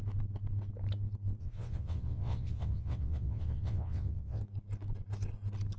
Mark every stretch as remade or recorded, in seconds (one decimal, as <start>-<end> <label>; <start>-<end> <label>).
0.0-1.4 recorded; 1.4-4.4 remade; 4.4-5.8 recorded